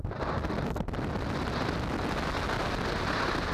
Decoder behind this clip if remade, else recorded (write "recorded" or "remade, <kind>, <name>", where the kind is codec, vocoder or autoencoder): recorded